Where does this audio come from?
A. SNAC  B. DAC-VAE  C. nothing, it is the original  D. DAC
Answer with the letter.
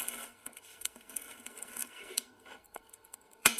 A